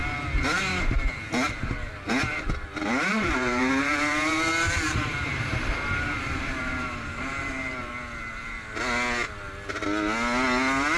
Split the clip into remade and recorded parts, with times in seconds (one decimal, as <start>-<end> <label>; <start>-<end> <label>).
0.0-3.1 recorded; 3.1-7.9 remade; 7.9-11.0 recorded